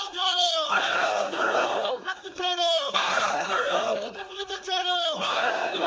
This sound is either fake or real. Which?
fake